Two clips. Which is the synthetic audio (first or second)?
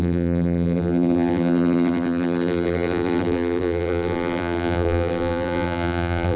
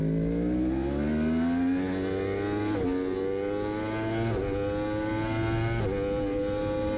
first